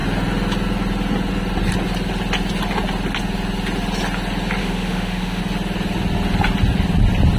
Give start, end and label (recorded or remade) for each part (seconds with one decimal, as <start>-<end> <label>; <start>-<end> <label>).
0.0-4.6 recorded; 4.6-5.4 remade; 5.4-7.4 recorded